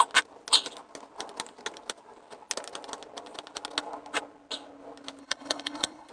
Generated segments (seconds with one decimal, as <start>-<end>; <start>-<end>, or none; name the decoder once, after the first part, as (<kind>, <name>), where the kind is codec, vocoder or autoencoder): 5.2-6.1 (codec, HILCodec)